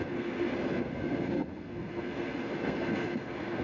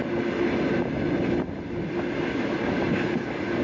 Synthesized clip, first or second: first